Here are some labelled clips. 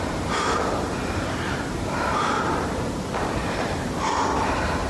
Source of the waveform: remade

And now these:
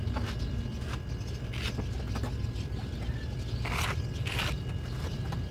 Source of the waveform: recorded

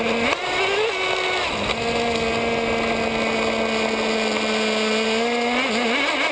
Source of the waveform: recorded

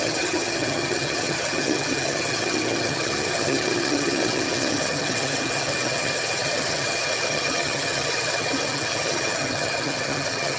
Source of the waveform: remade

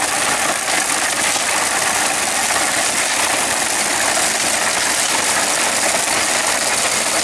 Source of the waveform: recorded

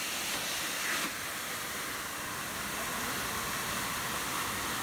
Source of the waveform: recorded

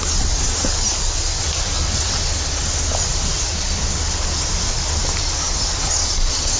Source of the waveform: recorded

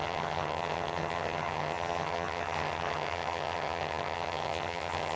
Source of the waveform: remade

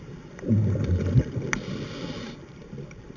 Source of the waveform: recorded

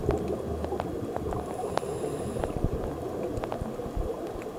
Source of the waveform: recorded